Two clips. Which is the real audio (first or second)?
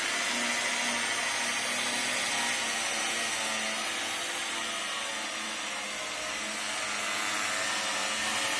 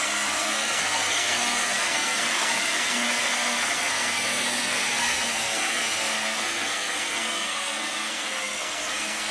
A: first